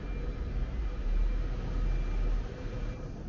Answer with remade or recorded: recorded